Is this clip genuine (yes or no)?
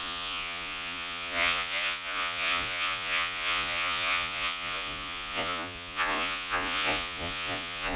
no